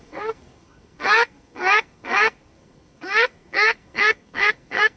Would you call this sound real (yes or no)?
no